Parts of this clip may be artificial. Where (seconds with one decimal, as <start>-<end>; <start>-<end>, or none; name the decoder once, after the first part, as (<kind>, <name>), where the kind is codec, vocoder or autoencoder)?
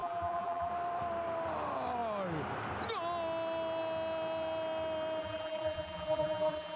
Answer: 0.0-0.7 (vocoder, BigVGAN v2); 5.2-6.8